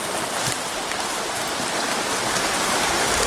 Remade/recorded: recorded